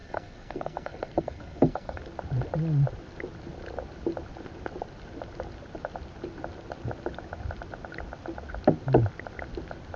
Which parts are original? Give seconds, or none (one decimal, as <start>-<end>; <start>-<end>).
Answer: 2.0-10.0